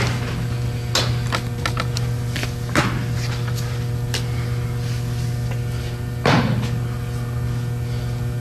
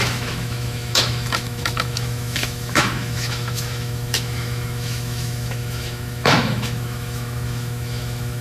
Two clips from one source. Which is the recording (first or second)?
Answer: first